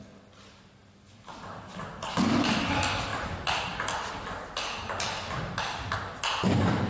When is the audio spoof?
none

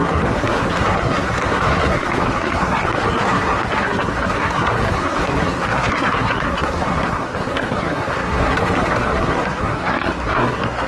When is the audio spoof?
0.0-10.9 (codec, SNAC)

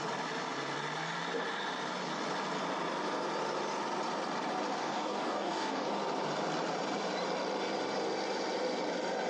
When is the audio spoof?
4.8-5.9 (codec, DAC)

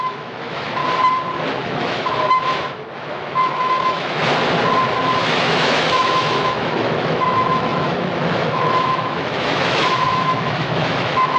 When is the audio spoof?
0.0-0.8 (autoencoder, DAC-VAE); 1.6-4.2; 5.2-11.4

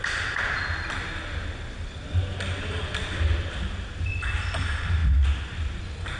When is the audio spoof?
none

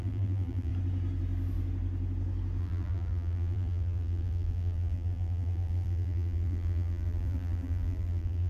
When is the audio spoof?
0.0-0.7 (vocoder, BigVGAN v2); 2.6-8.5